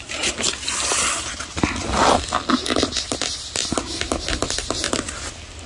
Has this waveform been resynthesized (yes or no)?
no